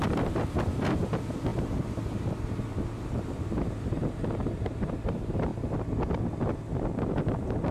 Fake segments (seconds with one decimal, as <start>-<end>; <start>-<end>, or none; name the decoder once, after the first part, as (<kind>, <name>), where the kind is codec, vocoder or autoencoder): 0.0-5.5 (vocoder, BigVGAN v2); 7.1-7.7